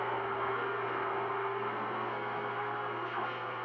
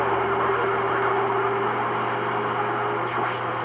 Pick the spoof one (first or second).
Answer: first